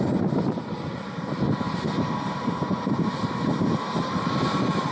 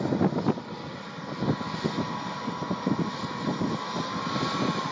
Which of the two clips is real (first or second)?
second